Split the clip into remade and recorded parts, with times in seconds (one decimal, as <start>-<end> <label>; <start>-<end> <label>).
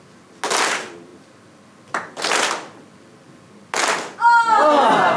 0.0-5.2 recorded